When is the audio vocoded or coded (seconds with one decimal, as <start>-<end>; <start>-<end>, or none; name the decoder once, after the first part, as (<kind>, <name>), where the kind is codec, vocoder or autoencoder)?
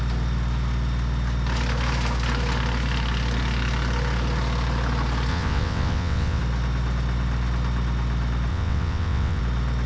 5.3-6.4 (vocoder, WaveNeXt); 8.5-9.4